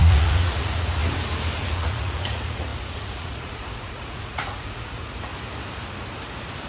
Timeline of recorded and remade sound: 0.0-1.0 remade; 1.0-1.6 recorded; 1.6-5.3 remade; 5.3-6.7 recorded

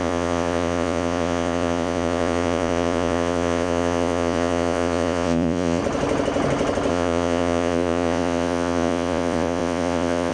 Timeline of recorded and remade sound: 0.0-5.8 remade; 5.8-6.9 recorded; 6.9-10.3 remade

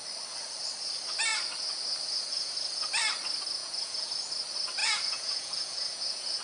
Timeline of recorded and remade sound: 0.0-3.6 recorded; 3.6-4.1 remade; 4.1-4.8 recorded; 4.8-6.4 remade